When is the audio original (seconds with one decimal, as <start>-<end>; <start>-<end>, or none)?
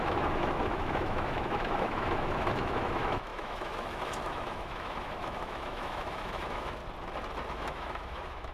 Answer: 6.8-7.5